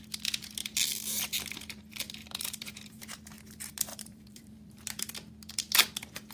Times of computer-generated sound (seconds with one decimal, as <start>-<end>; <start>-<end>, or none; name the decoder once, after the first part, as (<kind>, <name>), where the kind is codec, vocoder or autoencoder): 2.2-3.1 (vocoder, BigVGAN v2); 3.9-5.1